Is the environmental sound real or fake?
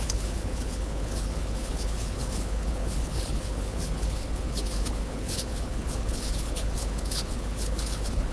fake